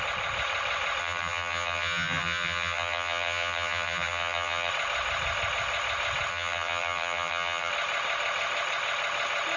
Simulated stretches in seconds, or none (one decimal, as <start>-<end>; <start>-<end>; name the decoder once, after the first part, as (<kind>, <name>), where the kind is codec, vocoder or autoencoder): 1.0-4.7 (vocoder, HiFi-GAN); 6.3-7.7